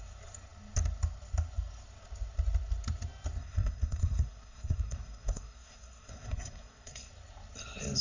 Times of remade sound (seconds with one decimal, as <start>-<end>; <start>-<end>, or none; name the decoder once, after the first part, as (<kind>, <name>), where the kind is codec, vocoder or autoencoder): 3.4-7.1 (codec, SNAC)